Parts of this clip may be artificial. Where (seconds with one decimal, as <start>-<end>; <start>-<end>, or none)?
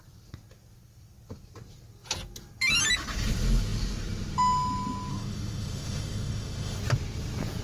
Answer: 5.1-6.8